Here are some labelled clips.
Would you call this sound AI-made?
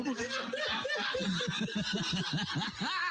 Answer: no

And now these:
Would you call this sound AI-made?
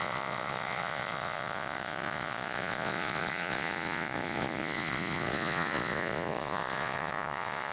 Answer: yes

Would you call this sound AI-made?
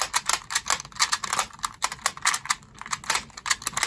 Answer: no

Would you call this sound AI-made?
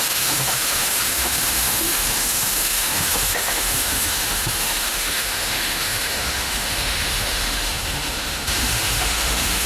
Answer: yes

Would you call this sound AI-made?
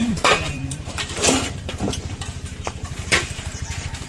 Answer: yes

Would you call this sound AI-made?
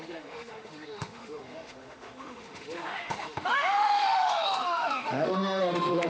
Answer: yes